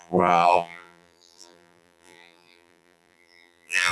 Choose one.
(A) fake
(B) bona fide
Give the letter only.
A